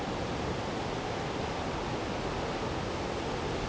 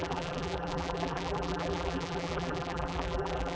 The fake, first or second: second